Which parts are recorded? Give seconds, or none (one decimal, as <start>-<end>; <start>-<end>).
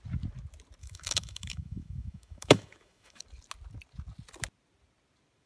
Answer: 0.0-0.8; 3.2-5.5